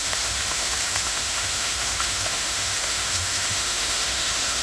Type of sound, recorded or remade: remade